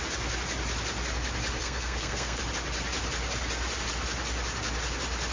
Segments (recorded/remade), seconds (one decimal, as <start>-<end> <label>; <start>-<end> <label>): 0.0-1.6 recorded; 1.6-2.4 remade; 2.4-5.3 recorded